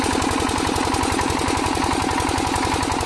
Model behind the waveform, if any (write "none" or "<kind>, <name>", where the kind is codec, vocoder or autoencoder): none